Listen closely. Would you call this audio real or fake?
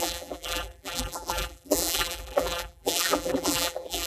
fake